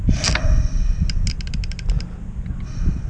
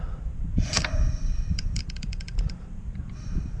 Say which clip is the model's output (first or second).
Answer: second